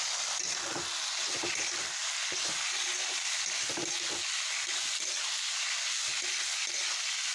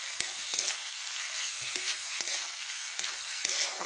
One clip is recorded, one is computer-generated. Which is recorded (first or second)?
first